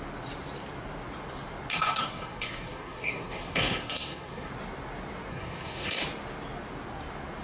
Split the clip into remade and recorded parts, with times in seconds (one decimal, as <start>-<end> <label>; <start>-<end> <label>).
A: 0.0-1.7 recorded; 1.7-4.5 remade; 4.5-5.3 recorded; 5.3-6.0 remade; 6.0-7.4 recorded